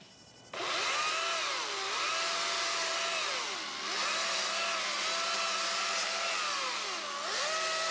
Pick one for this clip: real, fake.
real